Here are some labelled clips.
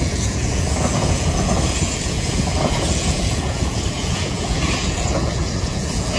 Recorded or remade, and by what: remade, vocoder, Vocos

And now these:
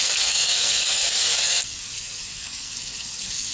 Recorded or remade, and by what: remade, codec, SNAC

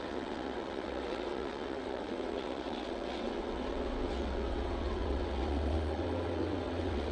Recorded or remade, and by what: remade, vocoder, WaveNeXt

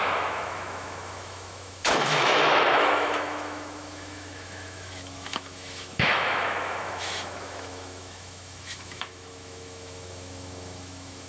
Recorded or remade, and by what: remade, autoencoder, DAC-VAE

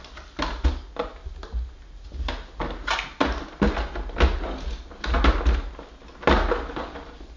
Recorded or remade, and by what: recorded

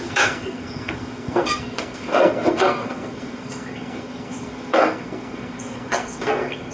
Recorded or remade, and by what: remade, codec, SNAC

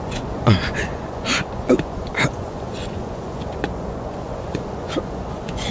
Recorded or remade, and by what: remade, vocoder, Vocos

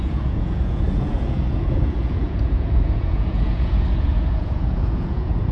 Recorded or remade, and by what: remade, vocoder, Vocos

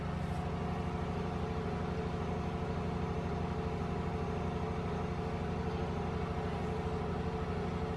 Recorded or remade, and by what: recorded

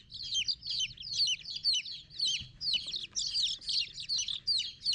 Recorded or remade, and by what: recorded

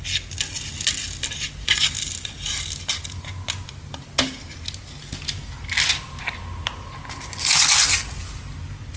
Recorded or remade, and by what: recorded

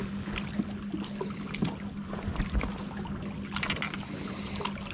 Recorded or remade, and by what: recorded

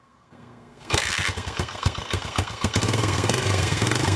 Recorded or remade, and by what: remade, codec, SNAC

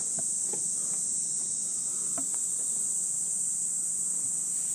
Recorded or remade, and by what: recorded